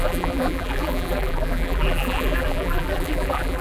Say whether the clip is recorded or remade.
remade